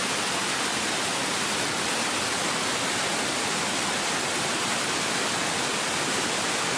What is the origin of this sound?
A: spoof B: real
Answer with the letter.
B